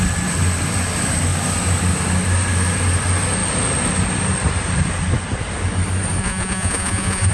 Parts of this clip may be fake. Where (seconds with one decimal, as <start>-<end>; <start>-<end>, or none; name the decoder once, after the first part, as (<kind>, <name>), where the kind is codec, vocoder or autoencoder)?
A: 6.2-7.3 (vocoder, Vocos)